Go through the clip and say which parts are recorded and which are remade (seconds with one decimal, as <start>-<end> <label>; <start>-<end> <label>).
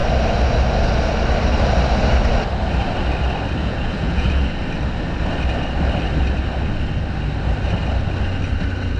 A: 0.0-3.6 recorded; 3.6-4.4 remade; 4.4-9.0 recorded